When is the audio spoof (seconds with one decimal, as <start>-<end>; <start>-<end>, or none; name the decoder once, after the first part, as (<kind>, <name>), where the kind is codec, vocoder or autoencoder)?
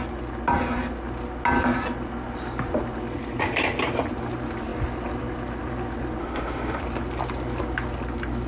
6.2-6.8 (autoencoder, DAC-VAE)